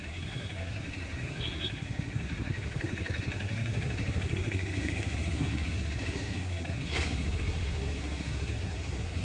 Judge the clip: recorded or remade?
remade